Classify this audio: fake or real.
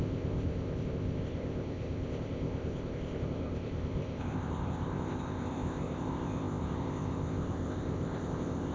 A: fake